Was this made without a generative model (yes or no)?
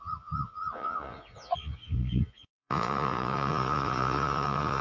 no